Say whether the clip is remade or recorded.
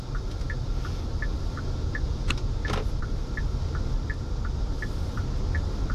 recorded